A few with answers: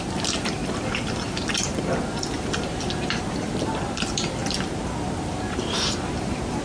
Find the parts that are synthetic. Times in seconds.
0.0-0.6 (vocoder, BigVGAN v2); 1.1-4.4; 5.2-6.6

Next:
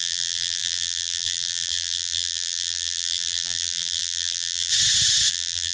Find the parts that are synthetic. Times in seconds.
0.0-4.7 (vocoder, BigVGAN v2); 5.3-5.7